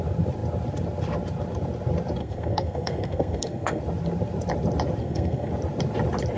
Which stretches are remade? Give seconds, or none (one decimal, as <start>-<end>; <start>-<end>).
2.2-3.8; 5.0-5.5